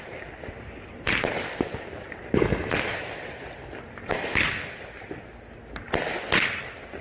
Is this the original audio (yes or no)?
yes